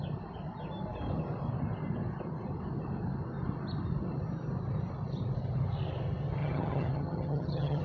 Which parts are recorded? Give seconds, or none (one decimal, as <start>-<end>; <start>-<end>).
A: 0.0-6.4